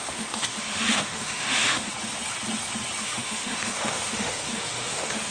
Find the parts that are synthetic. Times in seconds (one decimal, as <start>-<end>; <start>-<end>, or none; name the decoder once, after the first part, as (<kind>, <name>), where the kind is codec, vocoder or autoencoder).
0.0-1.9 (autoencoder, DAC-VAE); 3.0-5.3